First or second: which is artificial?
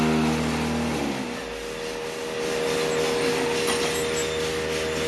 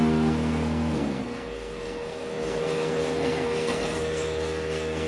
second